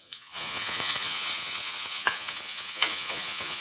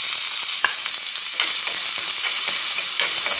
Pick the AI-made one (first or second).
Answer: first